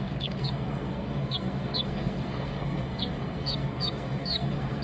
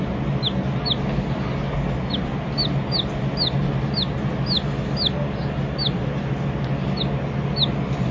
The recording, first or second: second